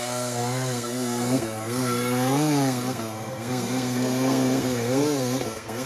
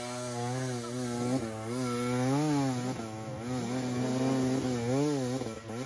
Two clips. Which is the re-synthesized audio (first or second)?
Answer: first